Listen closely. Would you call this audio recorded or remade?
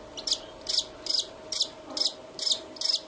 recorded